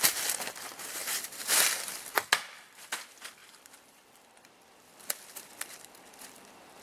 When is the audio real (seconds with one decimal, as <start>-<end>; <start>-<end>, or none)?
0.0-1.0; 1.6-3.4